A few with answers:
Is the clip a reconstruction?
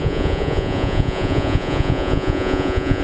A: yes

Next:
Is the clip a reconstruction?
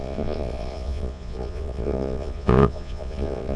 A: yes